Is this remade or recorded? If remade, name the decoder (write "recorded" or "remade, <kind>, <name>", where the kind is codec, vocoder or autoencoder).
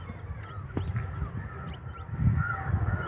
recorded